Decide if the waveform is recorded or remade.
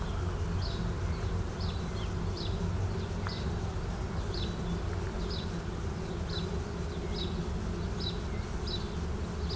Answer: recorded